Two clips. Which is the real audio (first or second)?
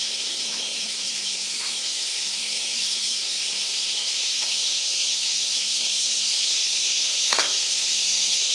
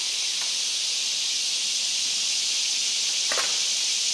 second